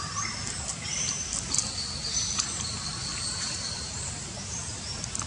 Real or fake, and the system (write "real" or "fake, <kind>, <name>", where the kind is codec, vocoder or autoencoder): fake, vocoder, BigVGAN v2